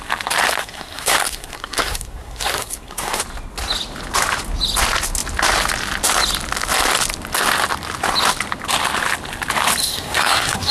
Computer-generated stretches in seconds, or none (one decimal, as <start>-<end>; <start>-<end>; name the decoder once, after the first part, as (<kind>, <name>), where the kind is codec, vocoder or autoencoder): 0.6-3.2 (codec, SNAC); 9.8-10.7